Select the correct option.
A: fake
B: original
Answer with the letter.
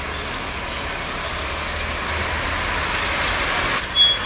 B